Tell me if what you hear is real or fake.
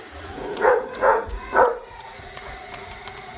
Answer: fake